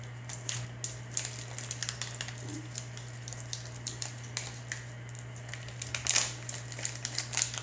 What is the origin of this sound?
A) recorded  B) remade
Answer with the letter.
A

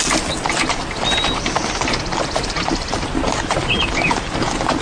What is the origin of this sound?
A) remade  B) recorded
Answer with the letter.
B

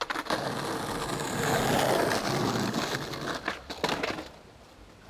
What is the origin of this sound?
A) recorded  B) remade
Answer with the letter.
A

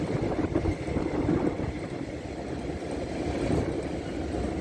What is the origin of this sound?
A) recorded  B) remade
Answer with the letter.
A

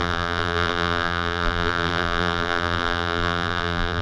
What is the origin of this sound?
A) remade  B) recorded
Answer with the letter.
A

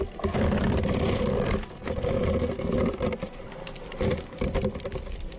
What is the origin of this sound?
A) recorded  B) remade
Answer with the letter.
B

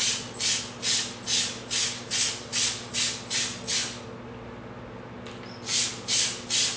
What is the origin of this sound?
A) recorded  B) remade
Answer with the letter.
A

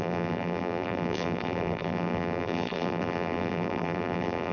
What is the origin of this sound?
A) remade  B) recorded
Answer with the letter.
A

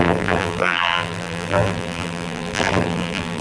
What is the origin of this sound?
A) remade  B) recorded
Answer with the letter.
A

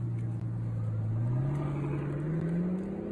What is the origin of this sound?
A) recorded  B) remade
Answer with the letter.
A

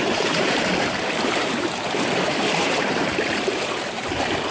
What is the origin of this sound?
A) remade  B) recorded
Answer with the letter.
A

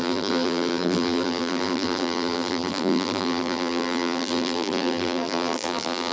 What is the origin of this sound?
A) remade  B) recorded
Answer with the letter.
A